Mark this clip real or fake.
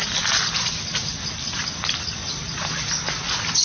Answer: real